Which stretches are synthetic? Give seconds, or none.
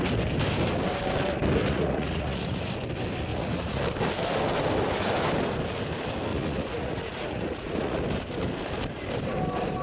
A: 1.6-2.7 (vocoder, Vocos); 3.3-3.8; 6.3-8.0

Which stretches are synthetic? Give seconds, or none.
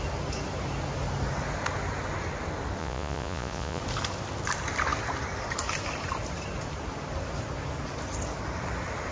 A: 2.8-3.8 (vocoder, Vocos)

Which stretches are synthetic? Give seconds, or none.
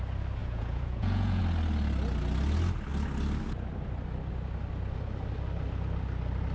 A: 0.4-1.4 (vocoder, Vocos)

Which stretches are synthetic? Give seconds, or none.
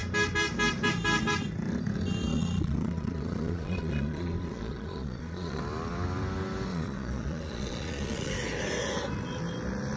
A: 2.3-5.6 (vocoder, Vocos); 6.7-8.3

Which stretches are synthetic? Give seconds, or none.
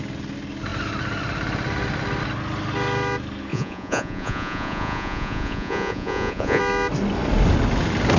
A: 3.5-6.6 (vocoder, Vocos)